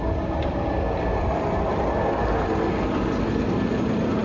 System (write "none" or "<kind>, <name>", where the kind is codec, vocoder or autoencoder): none